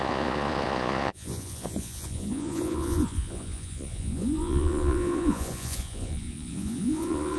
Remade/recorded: remade